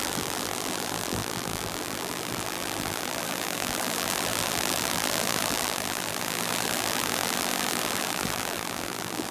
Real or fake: fake